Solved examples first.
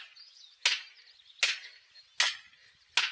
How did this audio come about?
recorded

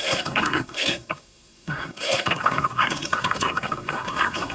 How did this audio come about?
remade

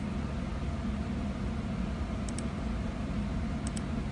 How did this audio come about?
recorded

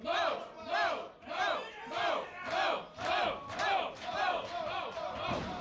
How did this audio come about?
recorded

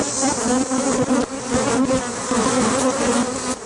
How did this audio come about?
recorded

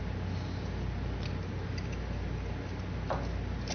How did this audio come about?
recorded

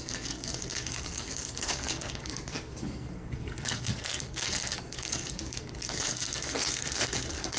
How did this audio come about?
remade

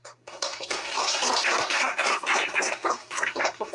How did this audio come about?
remade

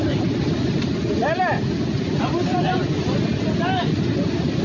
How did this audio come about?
recorded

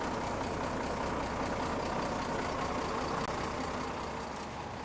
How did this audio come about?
recorded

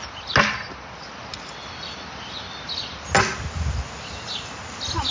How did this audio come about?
recorded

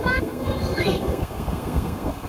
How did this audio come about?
remade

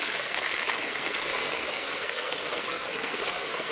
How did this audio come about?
remade